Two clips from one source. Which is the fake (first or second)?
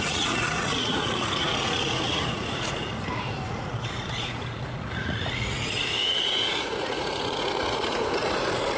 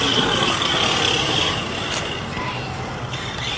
first